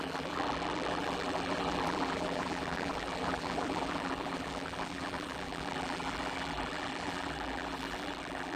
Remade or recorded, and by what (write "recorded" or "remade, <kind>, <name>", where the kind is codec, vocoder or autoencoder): remade, vocoder, BigVGAN v2